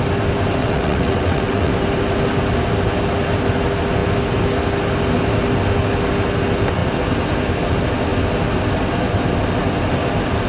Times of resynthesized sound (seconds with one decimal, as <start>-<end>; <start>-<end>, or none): 0.6-1.7